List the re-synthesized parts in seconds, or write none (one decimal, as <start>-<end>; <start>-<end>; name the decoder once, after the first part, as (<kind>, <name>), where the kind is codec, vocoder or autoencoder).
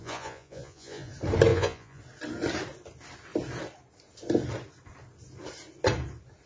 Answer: 0.0-1.1 (vocoder, Vocos); 1.5-2.0